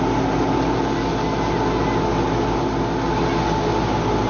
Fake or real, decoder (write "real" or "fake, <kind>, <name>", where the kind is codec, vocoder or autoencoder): real